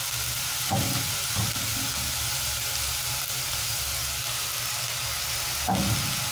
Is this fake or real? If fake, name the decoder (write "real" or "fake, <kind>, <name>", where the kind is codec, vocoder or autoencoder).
real